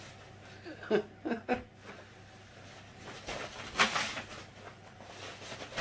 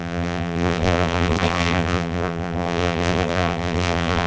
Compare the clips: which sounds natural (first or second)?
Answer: first